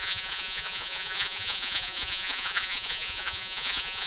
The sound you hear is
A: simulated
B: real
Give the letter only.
A